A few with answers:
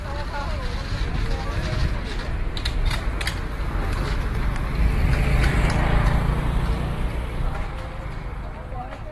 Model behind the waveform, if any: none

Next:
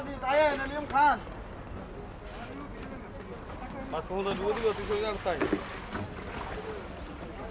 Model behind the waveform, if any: none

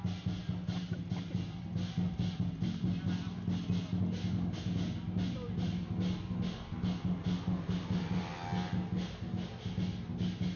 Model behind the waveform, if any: none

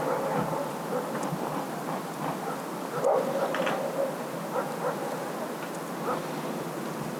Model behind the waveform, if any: none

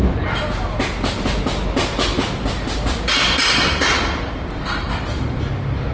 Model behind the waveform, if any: none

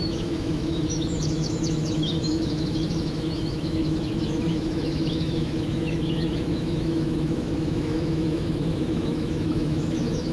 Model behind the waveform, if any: autoencoder, DAC-VAE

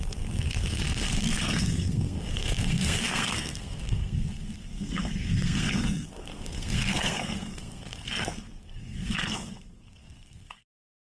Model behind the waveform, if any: codec, SNAC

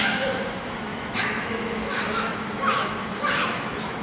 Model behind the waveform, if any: autoencoder, DAC-VAE